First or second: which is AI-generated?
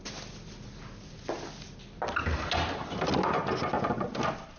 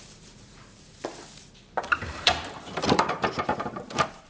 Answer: second